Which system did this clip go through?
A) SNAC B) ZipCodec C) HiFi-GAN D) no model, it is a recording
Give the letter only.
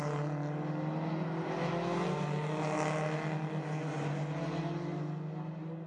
D